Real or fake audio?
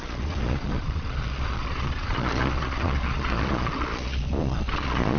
fake